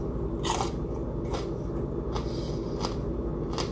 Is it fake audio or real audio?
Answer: real